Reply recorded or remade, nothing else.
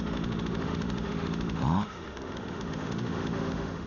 remade